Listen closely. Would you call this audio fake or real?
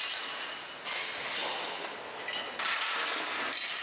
real